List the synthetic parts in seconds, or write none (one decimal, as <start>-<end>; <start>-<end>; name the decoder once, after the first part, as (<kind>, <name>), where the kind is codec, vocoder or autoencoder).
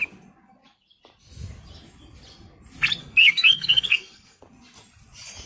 3.0-4.4 (codec, SNAC)